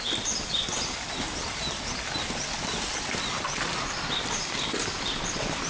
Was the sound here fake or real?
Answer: real